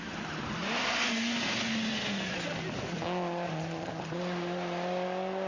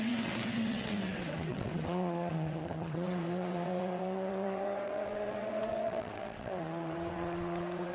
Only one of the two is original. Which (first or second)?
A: first